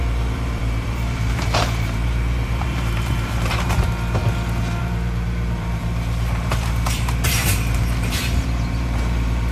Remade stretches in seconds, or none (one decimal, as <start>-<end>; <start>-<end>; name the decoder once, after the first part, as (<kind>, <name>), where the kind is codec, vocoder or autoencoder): 0.0-4.2 (vocoder, BigVGAN v2); 4.8-9.5